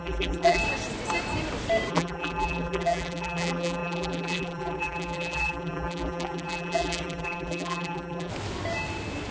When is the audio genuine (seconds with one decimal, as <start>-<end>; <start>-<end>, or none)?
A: 0.6-1.9; 8.3-9.3